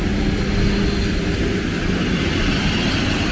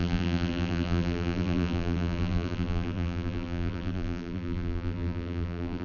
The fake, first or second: second